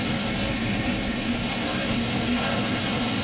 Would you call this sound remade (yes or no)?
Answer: yes